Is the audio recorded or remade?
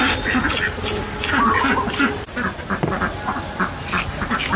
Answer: recorded